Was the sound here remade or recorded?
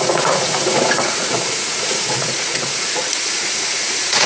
remade